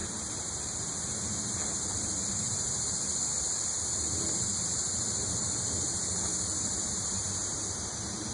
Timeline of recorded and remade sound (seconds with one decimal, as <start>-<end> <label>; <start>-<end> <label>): 0.0-8.3 recorded